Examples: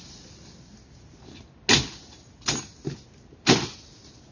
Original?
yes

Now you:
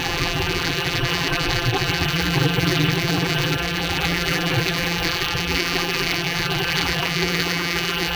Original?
no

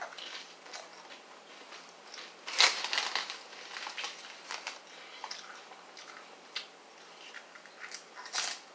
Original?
yes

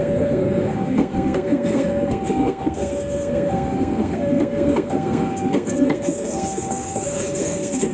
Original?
no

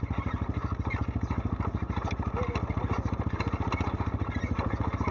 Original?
yes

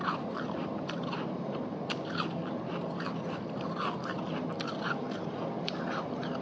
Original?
yes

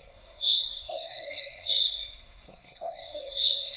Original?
no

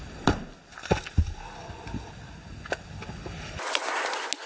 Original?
yes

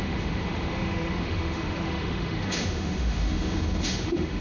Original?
no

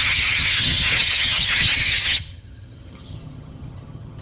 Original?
no